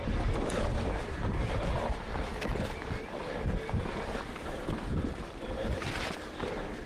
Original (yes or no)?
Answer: yes